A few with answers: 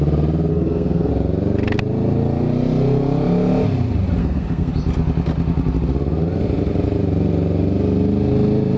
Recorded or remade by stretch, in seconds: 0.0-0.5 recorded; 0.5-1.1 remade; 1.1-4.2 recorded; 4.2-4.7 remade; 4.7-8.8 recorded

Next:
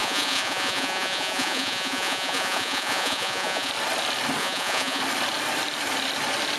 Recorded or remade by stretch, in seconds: 0.0-3.7 remade; 3.7-4.4 recorded; 4.4-5.0 remade; 5.0-6.6 recorded

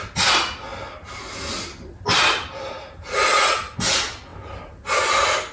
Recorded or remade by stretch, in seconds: 0.0-5.5 recorded